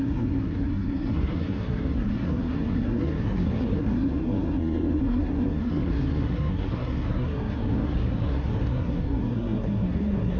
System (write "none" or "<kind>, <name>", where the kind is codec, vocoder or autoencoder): codec, SNAC